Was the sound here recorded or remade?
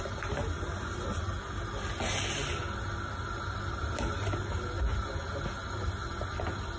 recorded